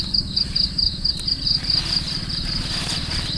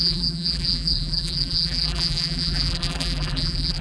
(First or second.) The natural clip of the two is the first